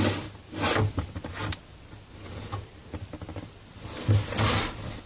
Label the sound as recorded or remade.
recorded